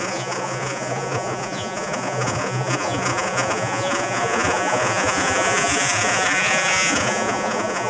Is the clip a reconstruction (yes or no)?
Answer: yes